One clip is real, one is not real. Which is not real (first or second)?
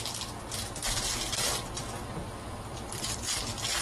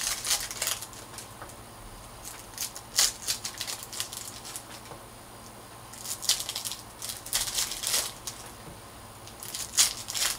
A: first